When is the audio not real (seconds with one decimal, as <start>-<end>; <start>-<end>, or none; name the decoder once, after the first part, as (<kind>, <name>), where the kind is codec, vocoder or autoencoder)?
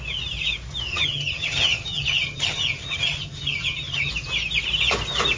0.9-4.1 (vocoder, HiFi-GAN)